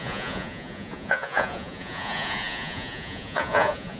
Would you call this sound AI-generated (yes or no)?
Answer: yes